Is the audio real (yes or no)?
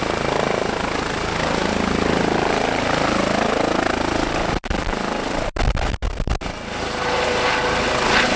yes